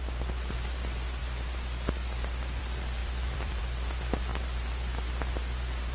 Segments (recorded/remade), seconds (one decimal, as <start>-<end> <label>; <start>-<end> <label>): 0.0-3.0 recorded; 3.0-3.6 remade; 3.6-5.9 recorded